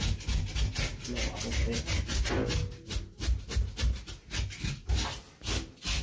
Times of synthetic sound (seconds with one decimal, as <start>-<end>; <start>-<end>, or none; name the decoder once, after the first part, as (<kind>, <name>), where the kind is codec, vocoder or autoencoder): none

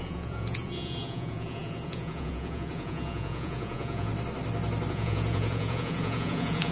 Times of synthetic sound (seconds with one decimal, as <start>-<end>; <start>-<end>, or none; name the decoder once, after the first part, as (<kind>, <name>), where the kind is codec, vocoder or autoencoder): 0.0-4.1 (vocoder, Vocos); 4.9-6.7